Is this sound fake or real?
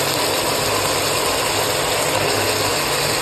real